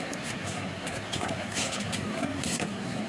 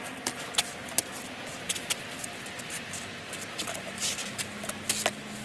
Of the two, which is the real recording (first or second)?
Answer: second